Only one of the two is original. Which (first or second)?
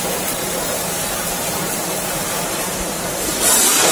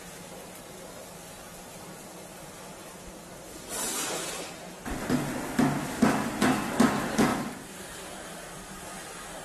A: second